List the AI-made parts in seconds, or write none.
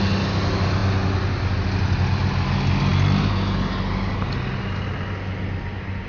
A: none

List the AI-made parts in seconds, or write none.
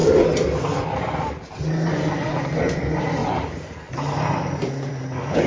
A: 3.2-4.9 (vocoder, BigVGAN v2)